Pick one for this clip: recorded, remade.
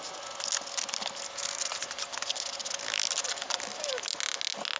recorded